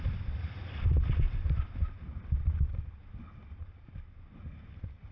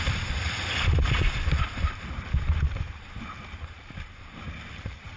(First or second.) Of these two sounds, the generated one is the second